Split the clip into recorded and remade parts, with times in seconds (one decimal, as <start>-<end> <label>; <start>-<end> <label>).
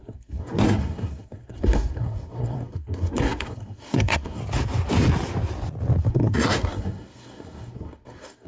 0.0-4.4 remade; 4.4-6.1 recorded; 6.1-8.5 remade